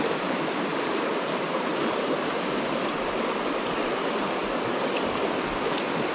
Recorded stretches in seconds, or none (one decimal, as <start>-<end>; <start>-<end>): 0.0-0.7; 4.4-6.1

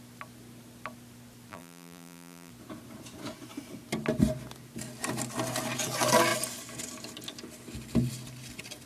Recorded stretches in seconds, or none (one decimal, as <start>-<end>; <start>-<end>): 0.0-1.5; 2.5-8.9